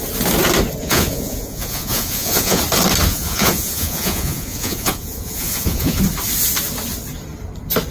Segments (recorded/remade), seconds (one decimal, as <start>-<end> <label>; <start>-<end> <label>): 0.0-0.8 recorded; 0.8-2.6 remade; 2.6-3.1 recorded; 3.1-6.0 remade; 6.0-7.9 recorded